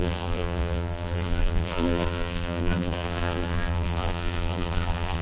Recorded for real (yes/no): no